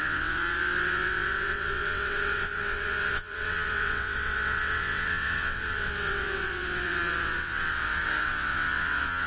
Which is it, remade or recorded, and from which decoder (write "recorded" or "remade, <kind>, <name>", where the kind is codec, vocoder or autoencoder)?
remade, vocoder, WaveNeXt